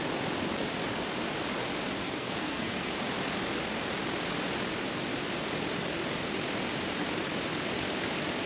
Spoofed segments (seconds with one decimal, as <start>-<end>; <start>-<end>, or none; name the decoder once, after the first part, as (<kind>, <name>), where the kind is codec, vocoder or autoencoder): 2.0-2.9 (codec, SNAC)